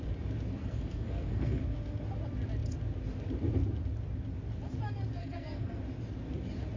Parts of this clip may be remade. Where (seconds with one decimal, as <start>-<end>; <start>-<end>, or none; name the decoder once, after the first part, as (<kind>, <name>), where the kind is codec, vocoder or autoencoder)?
0.6-1.6 (codec, SNAC); 5.2-5.8